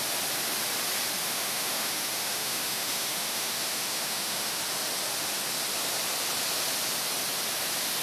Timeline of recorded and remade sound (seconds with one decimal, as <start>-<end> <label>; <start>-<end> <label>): 0.0-1.2 recorded; 1.2-4.6 remade; 4.6-8.0 recorded